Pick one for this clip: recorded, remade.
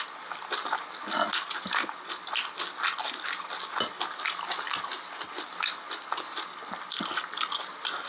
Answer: recorded